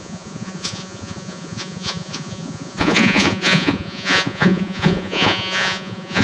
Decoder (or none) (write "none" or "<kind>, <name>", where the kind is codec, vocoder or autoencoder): vocoder, Vocos